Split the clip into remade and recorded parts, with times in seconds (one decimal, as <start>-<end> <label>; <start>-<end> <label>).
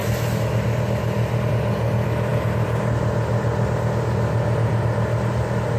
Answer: 0.0-5.8 recorded